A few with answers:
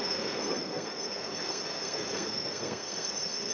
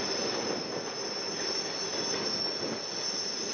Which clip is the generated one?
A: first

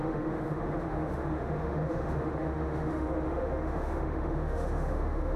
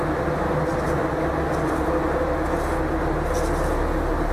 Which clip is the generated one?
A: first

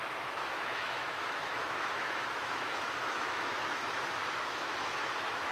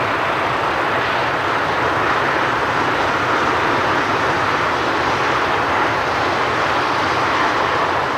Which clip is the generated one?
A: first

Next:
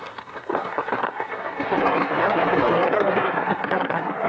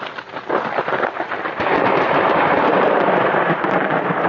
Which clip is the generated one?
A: first